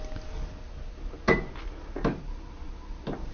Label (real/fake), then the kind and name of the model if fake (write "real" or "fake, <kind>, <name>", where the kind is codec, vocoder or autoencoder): real